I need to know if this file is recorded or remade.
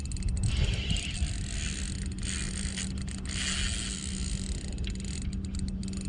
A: recorded